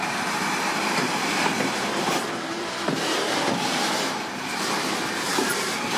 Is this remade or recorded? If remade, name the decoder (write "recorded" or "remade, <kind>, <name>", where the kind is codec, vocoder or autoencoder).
remade, vocoder, BigVGAN v2